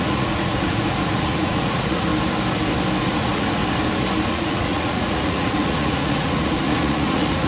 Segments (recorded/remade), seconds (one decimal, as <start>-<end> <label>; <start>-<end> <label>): 0.0-2.1 remade; 2.1-3.0 recorded; 3.0-3.6 remade; 3.6-4.3 recorded; 4.3-7.5 remade